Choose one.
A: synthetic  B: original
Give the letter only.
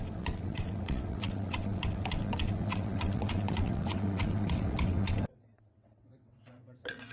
A